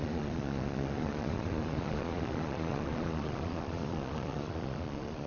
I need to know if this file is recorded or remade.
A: remade